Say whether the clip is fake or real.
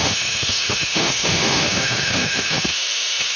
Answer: fake